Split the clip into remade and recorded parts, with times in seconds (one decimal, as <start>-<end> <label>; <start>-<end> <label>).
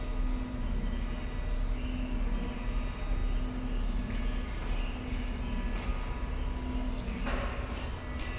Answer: 0.0-8.4 recorded